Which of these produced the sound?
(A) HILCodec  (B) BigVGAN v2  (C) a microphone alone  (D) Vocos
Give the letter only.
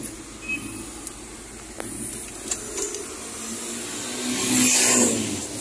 C